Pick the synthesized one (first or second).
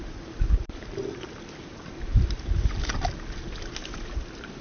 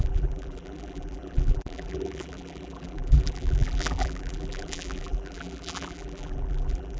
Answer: second